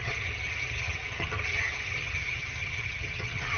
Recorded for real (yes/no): no